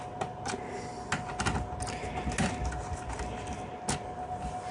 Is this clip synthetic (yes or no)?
no